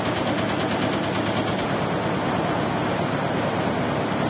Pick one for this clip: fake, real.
real